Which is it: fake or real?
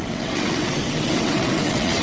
fake